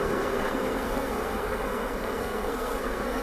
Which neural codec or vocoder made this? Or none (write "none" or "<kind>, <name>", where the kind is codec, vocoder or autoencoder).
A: codec, SNAC